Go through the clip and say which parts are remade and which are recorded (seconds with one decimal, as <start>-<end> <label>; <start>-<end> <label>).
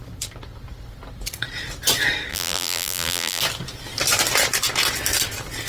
0.0-2.3 recorded; 2.3-3.4 remade; 3.4-5.7 recorded